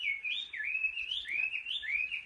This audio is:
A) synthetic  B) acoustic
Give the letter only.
A